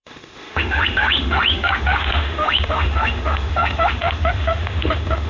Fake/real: fake